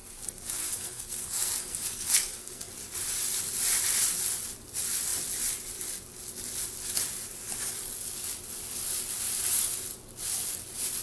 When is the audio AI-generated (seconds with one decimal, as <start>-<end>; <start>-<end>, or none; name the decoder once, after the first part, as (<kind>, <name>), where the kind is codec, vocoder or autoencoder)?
0.0-2.7 (codec, SNAC)